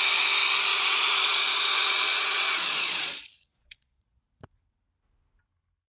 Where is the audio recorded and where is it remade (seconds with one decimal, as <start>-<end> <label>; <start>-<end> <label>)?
0.0-0.7 recorded; 0.7-4.2 remade; 4.2-5.9 recorded